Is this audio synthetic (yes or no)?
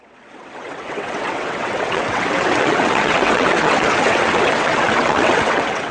yes